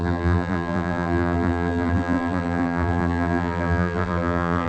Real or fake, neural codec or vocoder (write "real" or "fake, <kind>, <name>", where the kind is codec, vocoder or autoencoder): fake, vocoder, BigVGAN v2